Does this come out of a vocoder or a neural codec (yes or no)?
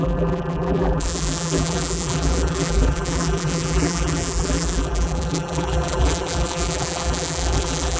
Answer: yes